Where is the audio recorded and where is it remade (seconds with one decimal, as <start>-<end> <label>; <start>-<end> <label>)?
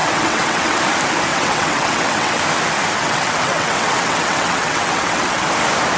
0.0-0.8 remade; 0.8-1.3 recorded; 1.3-2.4 remade; 2.4-3.0 recorded; 3.0-5.4 remade; 5.4-6.0 recorded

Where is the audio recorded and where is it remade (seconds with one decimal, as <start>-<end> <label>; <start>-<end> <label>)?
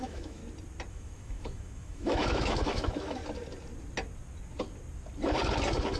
0.0-0.4 remade; 0.4-0.9 recorded; 0.9-3.2 remade; 3.2-6.0 recorded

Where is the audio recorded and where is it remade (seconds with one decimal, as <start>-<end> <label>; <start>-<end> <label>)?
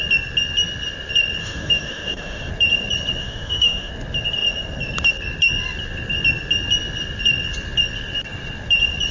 0.0-1.4 recorded; 1.4-2.5 remade; 2.5-3.2 recorded; 3.2-3.9 remade; 3.9-9.1 recorded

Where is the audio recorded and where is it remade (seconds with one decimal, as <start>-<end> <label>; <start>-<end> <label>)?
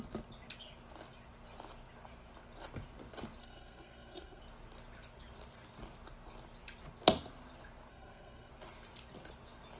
0.0-3.4 recorded; 3.4-4.4 remade; 4.4-7.9 recorded; 7.9-8.5 remade; 8.5-9.8 recorded